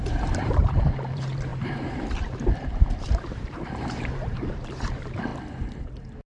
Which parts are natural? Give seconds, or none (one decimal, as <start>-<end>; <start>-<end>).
5.3-6.3